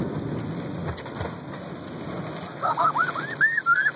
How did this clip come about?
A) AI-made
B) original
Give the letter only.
B